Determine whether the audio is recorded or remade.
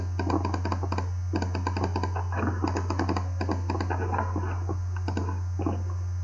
recorded